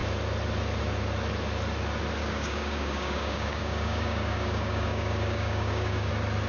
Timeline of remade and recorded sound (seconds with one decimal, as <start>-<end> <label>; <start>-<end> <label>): 0.0-2.2 recorded; 2.2-6.1 remade; 6.1-6.5 recorded